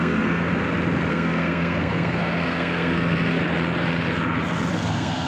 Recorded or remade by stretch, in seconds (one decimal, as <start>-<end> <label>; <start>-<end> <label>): 0.0-0.5 remade; 0.5-1.1 recorded; 1.1-3.4 remade; 3.4-4.7 recorded; 4.7-5.3 remade